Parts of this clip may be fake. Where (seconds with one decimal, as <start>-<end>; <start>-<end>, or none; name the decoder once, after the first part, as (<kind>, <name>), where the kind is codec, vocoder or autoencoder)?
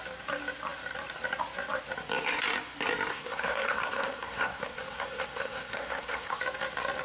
3.1-6.4 (codec, SNAC)